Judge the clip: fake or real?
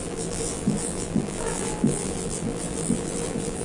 fake